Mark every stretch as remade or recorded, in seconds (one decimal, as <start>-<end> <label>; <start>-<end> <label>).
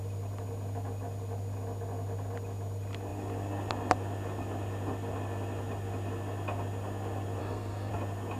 0.0-7.4 recorded; 7.4-7.9 remade; 7.9-8.4 recorded